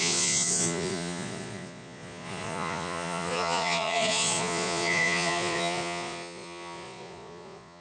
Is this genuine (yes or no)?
no